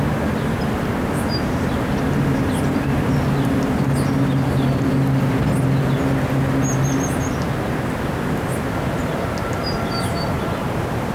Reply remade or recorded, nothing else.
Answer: recorded